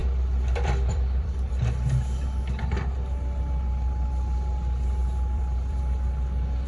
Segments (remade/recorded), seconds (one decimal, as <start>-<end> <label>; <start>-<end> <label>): 0.0-1.5 remade; 1.5-5.0 recorded; 5.0-5.8 remade; 5.8-6.7 recorded